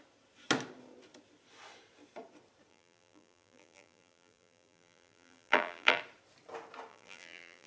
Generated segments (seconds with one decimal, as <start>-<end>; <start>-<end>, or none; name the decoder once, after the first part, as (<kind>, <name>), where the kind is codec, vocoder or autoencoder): 2.7-6.0 (vocoder, BigVGAN v2); 6.9-7.7